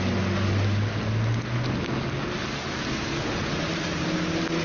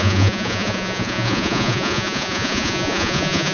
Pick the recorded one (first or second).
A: first